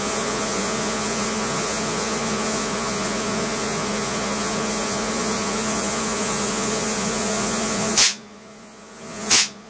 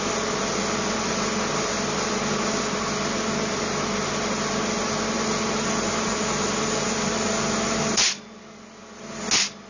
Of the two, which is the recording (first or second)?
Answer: second